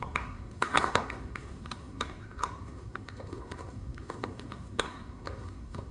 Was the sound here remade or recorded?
remade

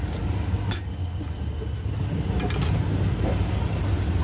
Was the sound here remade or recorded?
recorded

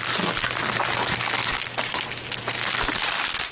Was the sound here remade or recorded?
recorded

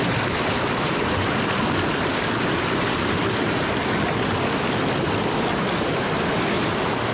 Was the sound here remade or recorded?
recorded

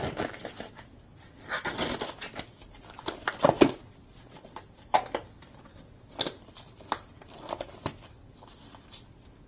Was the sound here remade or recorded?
recorded